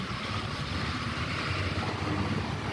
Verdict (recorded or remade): recorded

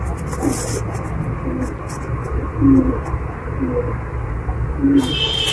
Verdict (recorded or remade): recorded